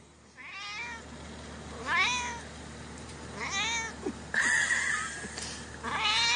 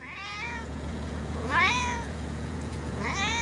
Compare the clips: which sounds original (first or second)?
first